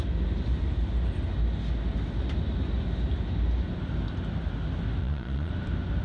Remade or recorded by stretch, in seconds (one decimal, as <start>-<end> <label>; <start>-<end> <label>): 0.0-5.0 recorded; 5.0-5.5 remade; 5.5-6.0 recorded